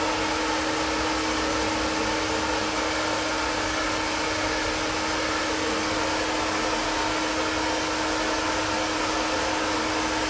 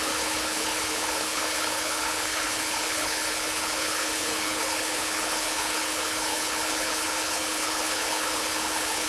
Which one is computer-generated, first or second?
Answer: second